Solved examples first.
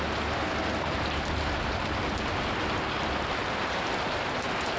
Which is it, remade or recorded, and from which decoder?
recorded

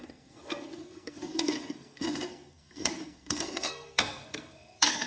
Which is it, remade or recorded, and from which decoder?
remade, codec, SNAC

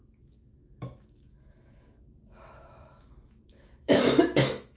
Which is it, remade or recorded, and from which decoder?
remade, autoencoder, DAC-VAE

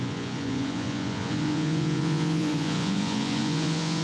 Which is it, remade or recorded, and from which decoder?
remade, vocoder, Vocos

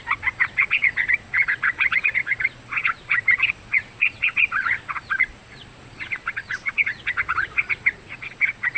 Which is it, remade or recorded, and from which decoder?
remade, vocoder, Vocos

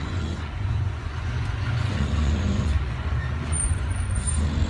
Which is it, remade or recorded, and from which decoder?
remade, vocoder, Vocos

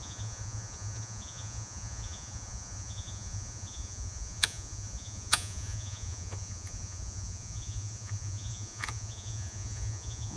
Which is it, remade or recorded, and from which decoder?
remade, vocoder, Vocos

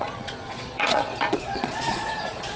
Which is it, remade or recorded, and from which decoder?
remade, vocoder, Vocos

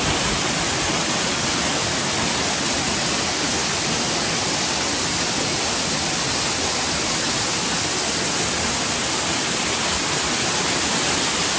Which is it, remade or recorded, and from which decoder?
recorded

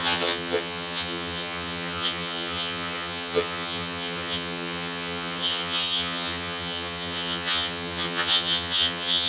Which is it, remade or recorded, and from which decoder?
remade, vocoder, HiFi-GAN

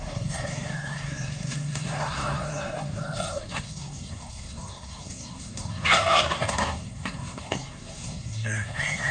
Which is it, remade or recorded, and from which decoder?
remade, codec, SNAC